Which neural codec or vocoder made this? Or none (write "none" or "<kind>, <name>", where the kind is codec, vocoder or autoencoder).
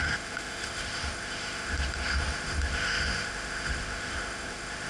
autoencoder, DAC-VAE